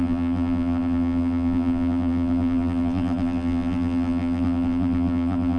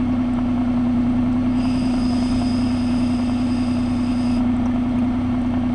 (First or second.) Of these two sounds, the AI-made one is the first